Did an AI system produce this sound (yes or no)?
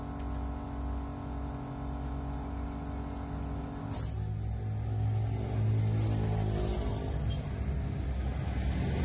no